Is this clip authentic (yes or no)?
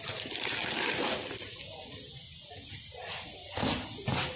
yes